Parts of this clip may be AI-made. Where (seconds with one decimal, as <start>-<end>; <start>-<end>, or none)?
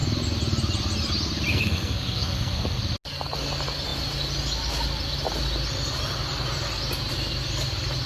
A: 1.5-2.8